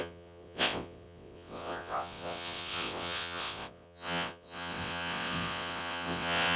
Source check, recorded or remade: remade